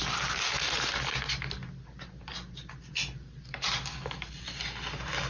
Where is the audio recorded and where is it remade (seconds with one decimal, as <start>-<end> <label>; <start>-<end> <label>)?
0.0-5.3 recorded